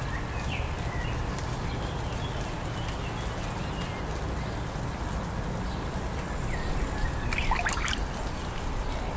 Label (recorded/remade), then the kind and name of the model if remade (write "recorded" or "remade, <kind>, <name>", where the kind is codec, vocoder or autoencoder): recorded